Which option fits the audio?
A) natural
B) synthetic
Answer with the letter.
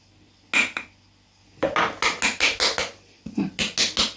A